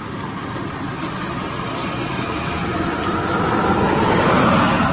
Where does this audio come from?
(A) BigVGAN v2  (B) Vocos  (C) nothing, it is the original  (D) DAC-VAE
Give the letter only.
A